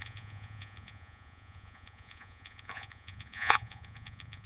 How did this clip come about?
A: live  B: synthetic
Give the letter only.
B